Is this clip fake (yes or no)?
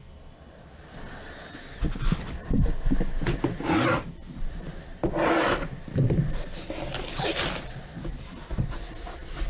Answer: no